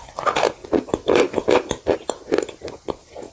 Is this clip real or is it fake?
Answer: real